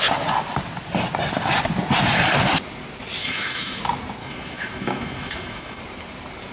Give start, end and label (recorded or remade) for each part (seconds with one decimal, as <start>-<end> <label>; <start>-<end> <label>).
0.0-3.2 recorded; 3.2-3.8 remade; 3.8-4.2 recorded; 4.2-5.8 remade; 5.8-6.5 recorded